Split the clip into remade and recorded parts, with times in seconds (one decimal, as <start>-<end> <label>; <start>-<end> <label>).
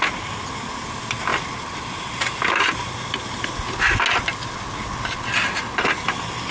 0.0-6.5 recorded